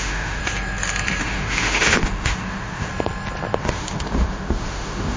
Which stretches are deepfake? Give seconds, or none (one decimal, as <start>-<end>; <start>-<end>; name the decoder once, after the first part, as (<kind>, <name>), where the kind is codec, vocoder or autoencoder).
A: 0.0-0.4 (autoencoder, DAC-VAE); 1.2-2.9; 3.6-5.2